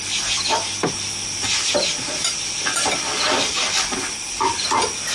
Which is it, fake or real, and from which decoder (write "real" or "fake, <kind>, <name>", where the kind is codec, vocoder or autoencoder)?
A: real